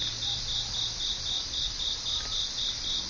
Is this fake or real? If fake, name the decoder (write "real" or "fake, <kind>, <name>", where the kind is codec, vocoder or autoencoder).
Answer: real